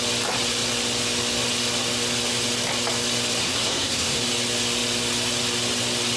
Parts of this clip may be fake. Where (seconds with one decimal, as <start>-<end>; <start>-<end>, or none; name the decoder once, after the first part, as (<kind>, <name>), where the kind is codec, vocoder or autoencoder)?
3.4-4.2 (codec, SNAC)